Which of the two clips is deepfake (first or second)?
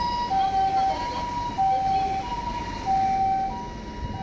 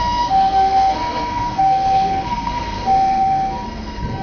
second